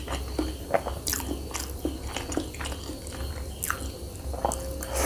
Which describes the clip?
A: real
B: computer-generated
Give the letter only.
A